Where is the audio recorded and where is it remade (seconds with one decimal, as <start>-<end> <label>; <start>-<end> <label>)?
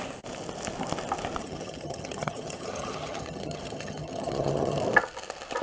0.0-1.4 recorded; 1.4-4.8 remade; 4.8-5.6 recorded